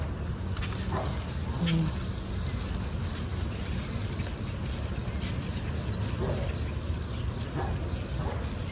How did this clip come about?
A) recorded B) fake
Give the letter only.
A